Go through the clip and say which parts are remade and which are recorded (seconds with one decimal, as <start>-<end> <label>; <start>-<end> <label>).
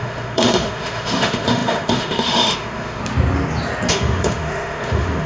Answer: 0.0-3.0 remade; 3.0-3.9 recorded; 3.9-5.3 remade